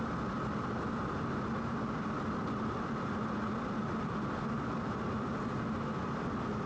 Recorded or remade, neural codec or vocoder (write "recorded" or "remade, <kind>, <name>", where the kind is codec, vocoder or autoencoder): remade, vocoder, BigVGAN v2